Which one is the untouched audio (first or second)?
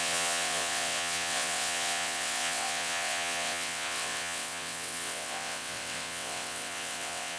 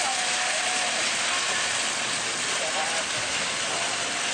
second